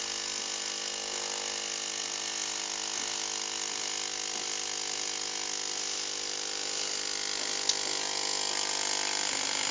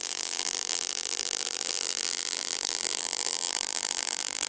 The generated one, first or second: second